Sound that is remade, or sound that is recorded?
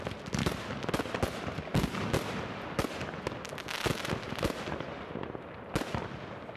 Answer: recorded